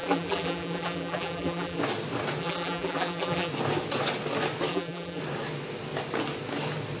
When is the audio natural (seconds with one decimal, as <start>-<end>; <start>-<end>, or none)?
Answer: 1.8-2.4; 3.5-4.7; 5.2-7.0